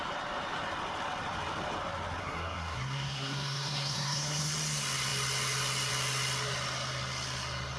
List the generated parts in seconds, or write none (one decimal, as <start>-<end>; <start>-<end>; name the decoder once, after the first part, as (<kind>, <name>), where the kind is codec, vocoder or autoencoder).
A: 2.2-4.5 (codec, SNAC)